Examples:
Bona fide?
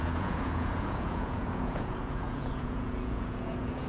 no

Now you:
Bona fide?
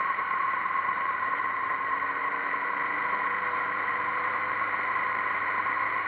no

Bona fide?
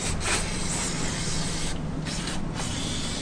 yes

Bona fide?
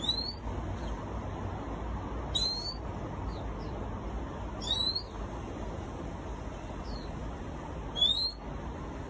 yes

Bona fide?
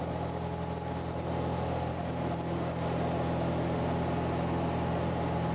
yes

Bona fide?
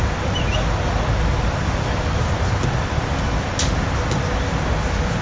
yes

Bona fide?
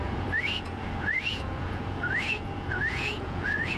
no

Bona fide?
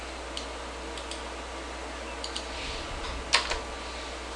yes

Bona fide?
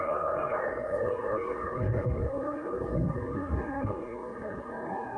no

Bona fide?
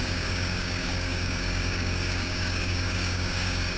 no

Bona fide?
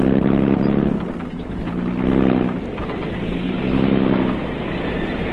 yes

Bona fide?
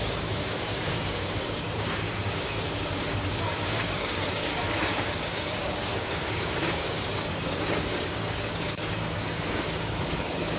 no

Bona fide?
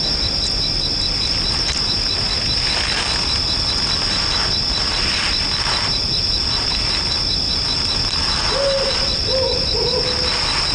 yes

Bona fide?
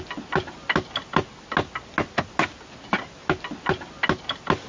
yes